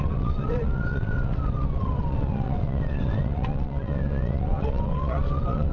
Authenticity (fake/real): fake